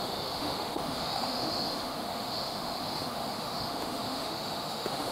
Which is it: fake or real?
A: fake